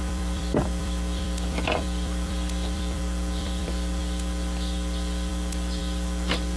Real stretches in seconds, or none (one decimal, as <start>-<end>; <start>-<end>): 4.0-6.6